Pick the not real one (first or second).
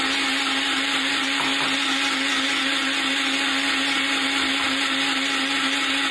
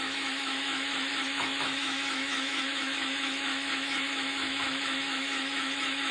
second